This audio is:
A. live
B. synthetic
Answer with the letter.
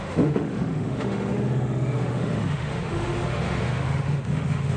B